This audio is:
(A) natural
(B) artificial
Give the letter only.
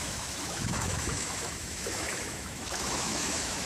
B